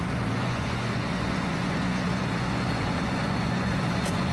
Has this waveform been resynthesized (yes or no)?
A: yes